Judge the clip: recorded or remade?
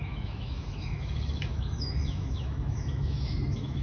remade